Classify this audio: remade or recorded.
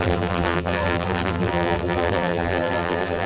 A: remade